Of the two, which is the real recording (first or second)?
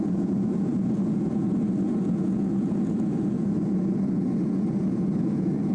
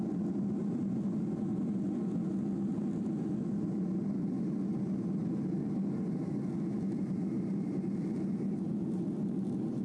second